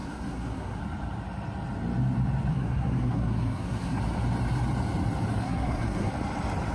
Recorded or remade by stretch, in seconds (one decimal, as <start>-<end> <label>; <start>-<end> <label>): 0.0-0.8 remade; 0.8-2.5 recorded; 2.5-4.0 remade; 4.0-5.4 recorded; 5.4-6.1 remade; 6.1-6.7 recorded